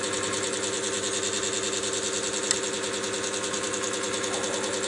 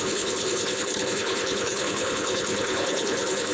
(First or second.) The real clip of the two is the first